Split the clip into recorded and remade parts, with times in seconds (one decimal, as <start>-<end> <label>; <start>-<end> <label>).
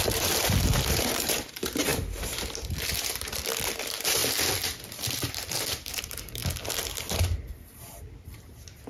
0.0-1.9 remade; 1.9-3.8 recorded; 3.8-4.2 remade; 4.2-5.2 recorded; 5.2-6.4 remade; 6.4-8.0 recorded; 8.0-8.9 remade